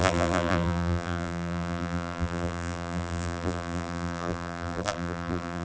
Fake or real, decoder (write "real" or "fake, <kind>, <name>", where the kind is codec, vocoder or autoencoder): fake, vocoder, BigVGAN v2